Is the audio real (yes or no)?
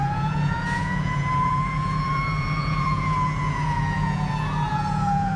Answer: no